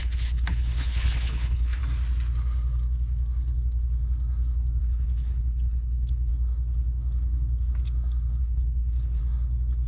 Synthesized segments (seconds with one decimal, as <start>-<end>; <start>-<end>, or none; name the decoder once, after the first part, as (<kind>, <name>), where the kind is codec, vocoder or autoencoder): 0.0-1.8 (codec, HILCodec); 4.8-6.3; 8.4-9.2